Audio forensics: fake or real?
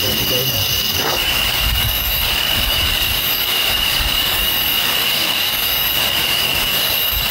fake